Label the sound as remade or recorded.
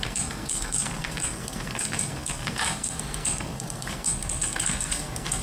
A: remade